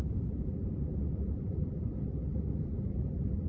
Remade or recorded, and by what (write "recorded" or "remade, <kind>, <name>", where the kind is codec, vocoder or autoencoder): remade, vocoder, BigVGAN v2